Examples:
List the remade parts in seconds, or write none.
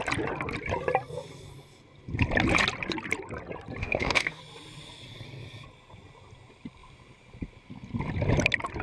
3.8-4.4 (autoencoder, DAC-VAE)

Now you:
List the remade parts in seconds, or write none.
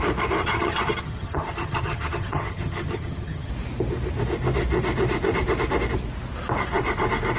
0.4-3.5 (vocoder, HiFi-GAN)